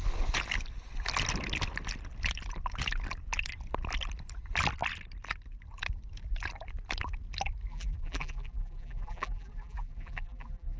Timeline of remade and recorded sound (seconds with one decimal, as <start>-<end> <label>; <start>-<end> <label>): 0.0-7.7 recorded; 7.7-10.8 remade